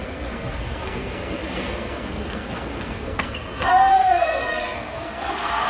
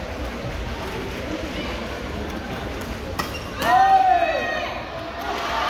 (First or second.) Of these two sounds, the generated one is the first